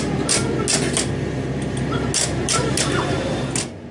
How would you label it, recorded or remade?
recorded